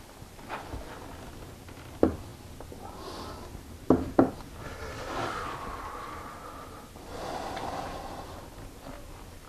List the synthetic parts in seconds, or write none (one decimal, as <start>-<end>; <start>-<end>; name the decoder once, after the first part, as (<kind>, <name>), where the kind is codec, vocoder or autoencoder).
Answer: none